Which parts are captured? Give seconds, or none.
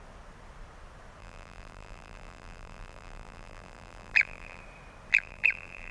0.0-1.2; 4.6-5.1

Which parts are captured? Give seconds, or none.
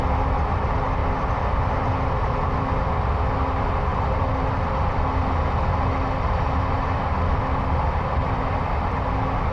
0.0-1.0; 1.9-9.5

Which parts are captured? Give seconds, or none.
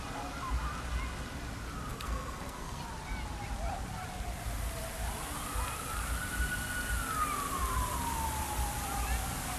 0.0-1.9; 2.8-9.6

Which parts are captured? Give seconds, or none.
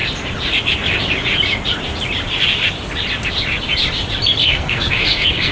0.0-4.4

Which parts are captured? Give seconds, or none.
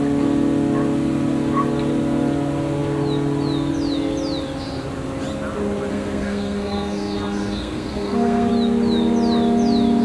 0.0-5.9; 8.5-10.0